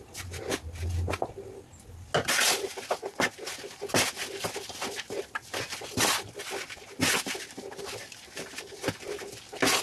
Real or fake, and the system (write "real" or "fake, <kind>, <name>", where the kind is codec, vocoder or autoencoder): real